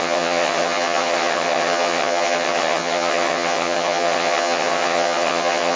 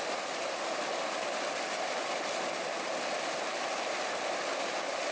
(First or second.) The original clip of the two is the second